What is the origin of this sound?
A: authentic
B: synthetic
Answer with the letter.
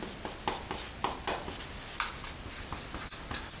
A